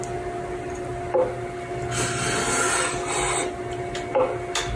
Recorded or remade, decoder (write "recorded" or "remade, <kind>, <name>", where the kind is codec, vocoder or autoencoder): recorded